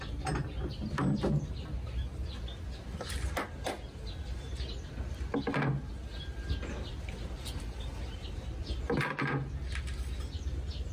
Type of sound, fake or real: real